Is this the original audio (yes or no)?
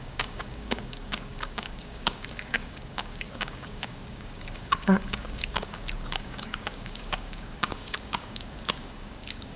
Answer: no